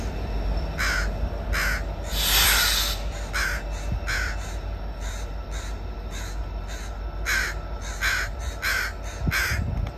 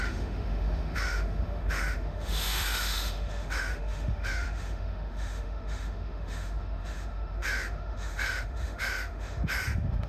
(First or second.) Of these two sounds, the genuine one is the first